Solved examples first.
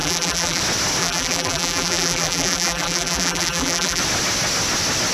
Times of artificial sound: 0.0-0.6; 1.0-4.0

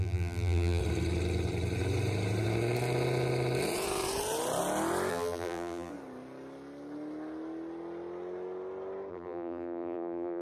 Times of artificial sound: 0.0-0.8; 5.1-5.9; 9.1-10.4

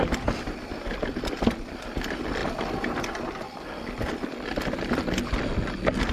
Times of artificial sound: none

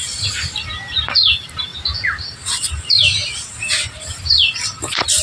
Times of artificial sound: 0.0-5.2

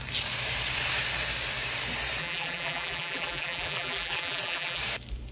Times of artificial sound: 2.2-4.8

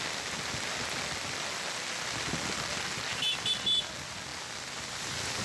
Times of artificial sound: 4.3-5.4

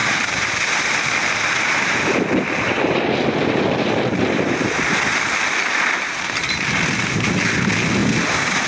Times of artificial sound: 0.0-0.7

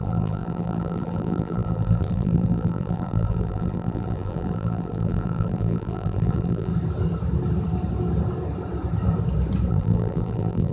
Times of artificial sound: 0.0-6.7; 9.7-10.7